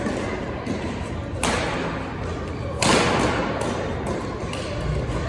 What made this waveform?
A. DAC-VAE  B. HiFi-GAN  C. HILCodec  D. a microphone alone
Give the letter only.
D